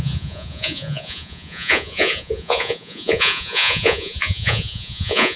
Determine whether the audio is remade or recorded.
remade